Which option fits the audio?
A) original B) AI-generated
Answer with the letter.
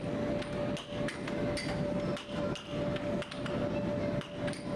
A